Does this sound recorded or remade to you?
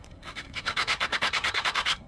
remade